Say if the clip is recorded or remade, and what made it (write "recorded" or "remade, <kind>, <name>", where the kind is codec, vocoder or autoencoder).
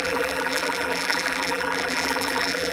remade, vocoder, BigVGAN v2